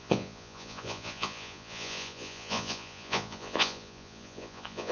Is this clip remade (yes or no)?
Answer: yes